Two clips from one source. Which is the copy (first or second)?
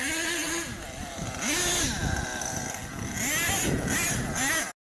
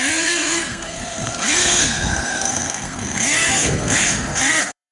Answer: second